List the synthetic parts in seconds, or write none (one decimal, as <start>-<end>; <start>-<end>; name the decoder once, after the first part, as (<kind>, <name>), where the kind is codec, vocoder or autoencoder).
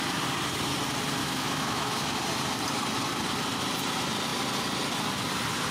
1.2-2.2 (autoencoder, DAC-VAE)